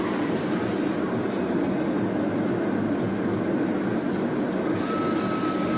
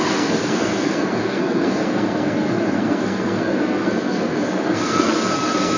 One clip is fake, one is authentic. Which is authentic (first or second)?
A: first